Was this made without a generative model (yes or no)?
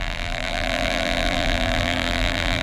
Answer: no